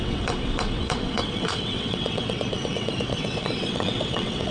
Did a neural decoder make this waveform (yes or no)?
yes